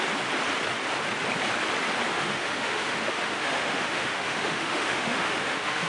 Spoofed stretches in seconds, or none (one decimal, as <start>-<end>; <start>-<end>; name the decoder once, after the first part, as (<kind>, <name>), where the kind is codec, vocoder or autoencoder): 2.1-5.9 (autoencoder, DAC-VAE)